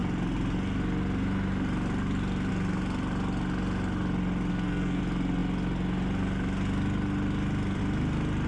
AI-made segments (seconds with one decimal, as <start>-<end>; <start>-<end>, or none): 4.5-5.0